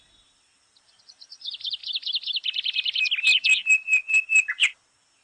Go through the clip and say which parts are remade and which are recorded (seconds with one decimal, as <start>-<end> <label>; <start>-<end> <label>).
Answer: 0.0-1.8 remade; 1.8-5.2 recorded